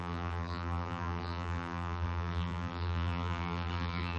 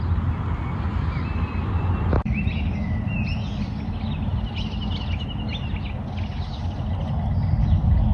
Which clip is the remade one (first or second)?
first